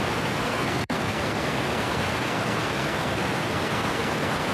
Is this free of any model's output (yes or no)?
no